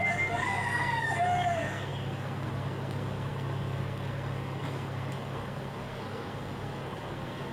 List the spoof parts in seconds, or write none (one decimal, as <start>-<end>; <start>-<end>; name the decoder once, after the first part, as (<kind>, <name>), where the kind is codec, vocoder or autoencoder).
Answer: 0.0-7.5 (codec, SNAC)